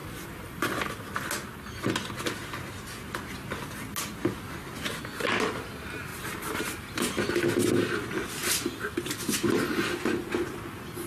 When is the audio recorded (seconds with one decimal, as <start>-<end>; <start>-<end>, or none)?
0.9-6.1; 6.6-11.1